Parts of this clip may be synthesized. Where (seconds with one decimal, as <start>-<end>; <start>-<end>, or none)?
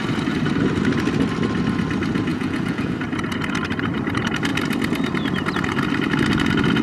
2.3-2.9